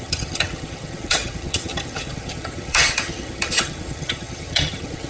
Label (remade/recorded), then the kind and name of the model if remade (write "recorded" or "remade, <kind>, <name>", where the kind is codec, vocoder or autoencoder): remade, vocoder, HiFi-GAN